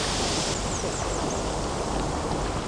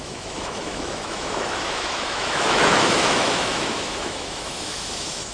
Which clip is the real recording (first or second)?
first